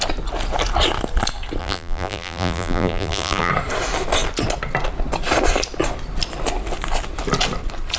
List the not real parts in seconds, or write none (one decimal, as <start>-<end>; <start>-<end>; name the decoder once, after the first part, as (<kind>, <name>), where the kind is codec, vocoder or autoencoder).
1.6-3.5 (vocoder, BigVGAN v2)